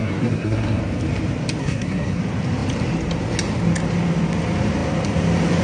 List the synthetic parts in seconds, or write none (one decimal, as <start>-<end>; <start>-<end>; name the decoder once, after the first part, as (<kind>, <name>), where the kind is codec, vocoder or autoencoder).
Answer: 0.0-0.8 (codec, SNAC); 1.6-2.2